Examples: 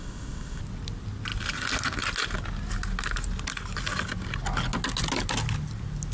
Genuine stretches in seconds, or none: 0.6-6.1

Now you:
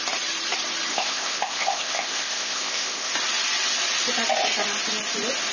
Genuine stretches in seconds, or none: 0.0-0.9; 3.1-5.5

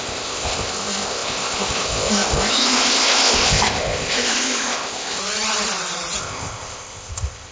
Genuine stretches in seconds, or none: 5.2-6.2